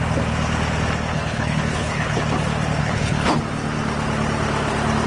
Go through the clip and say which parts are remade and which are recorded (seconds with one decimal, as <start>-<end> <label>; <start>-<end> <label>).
0.0-1.1 recorded; 1.1-2.2 remade; 2.2-2.8 recorded; 2.8-3.4 remade; 3.4-5.1 recorded